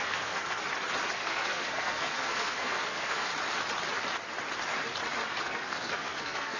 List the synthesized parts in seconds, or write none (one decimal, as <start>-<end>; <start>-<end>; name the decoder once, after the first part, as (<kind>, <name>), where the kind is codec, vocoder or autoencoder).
0.0-0.6 (codec, SNAC); 1.2-3.3; 5.4-6.6

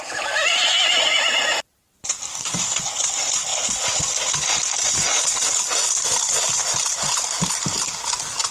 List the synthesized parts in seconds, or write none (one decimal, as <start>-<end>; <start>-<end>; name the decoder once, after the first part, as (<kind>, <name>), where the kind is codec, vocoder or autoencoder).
2.3-2.8 (codec, DAC)

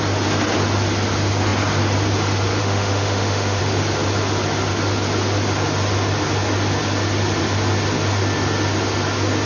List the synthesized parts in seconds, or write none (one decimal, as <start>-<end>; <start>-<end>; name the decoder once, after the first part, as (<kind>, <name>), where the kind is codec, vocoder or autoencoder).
2.6-3.6 (autoencoder, DAC-VAE)